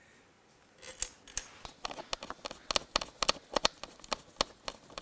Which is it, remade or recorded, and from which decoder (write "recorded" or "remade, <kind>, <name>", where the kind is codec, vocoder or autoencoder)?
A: recorded